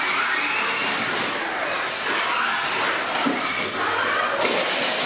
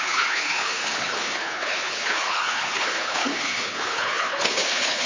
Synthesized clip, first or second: second